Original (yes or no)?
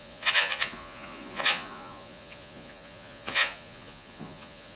no